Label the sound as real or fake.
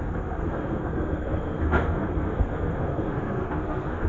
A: fake